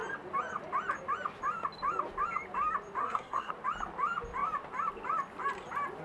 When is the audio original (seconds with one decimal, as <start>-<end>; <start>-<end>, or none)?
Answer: 0.0-3.0; 3.5-6.0